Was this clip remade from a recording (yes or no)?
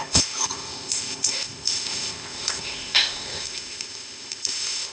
yes